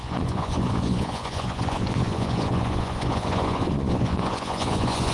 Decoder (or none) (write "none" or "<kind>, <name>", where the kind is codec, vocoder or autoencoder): vocoder, Vocos